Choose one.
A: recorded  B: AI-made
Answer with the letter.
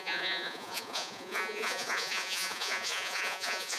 B